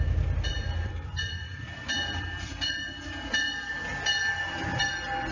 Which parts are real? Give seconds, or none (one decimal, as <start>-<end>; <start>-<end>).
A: 0.0-0.5; 3.7-5.3